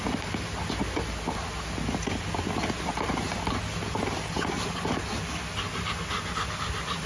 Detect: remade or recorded recorded